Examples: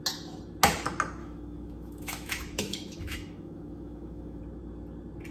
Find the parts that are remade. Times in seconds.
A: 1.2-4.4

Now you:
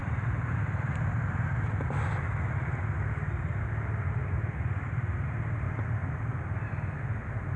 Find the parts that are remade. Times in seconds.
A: 0.0-1.5

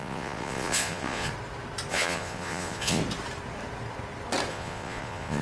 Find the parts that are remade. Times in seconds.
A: 0.0-1.3; 1.9-3.0; 4.5-5.4

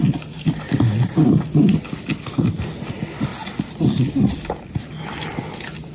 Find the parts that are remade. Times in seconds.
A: none

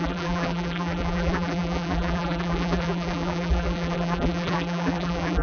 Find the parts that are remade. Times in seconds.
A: 0.0-5.4

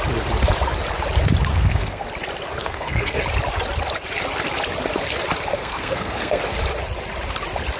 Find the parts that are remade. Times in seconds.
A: 1.5-2.1; 2.6-3.2; 5.5-6.4

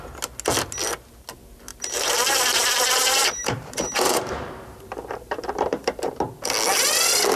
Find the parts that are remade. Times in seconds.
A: 1.7-6.1